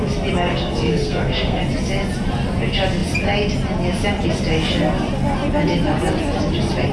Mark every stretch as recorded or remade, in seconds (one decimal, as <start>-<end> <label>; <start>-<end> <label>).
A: 0.0-0.5 recorded; 0.5-1.6 remade; 1.6-6.9 recorded